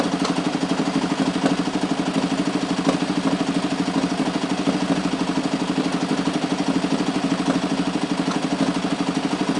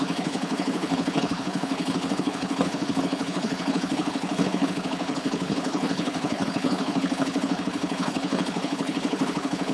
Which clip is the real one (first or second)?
first